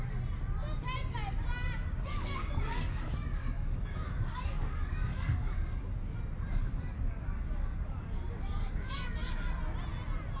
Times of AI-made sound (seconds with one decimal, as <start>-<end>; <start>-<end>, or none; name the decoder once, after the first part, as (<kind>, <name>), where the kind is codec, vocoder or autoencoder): 2.1-5.8 (codec, DAC); 6.5-9.5